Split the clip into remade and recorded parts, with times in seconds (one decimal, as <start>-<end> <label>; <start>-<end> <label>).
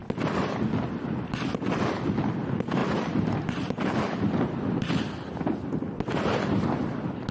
0.0-7.3 recorded